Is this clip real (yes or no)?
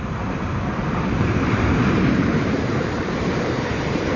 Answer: no